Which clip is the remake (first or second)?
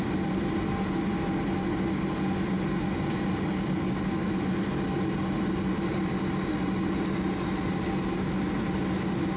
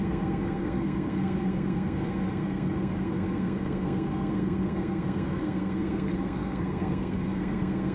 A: second